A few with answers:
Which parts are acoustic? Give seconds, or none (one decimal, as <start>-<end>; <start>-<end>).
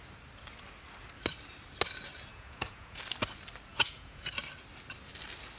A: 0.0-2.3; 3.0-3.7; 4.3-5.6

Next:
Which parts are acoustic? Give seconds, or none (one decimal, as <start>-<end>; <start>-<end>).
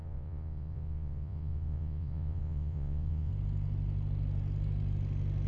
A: 3.3-5.5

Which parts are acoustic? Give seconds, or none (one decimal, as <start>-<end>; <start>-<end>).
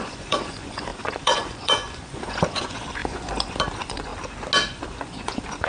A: 4.1-4.7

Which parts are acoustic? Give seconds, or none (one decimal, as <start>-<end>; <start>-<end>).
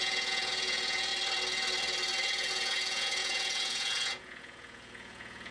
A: 1.1-2.5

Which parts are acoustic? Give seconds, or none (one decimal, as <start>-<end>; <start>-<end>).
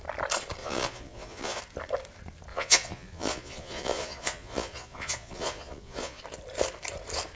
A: 0.0-0.6; 1.6-2.5; 6.2-7.4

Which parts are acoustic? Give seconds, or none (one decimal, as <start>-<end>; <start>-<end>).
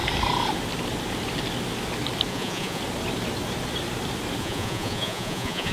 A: 0.0-2.3; 2.8-4.4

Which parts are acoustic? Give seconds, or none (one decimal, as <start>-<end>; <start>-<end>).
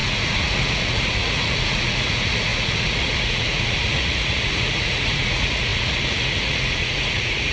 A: none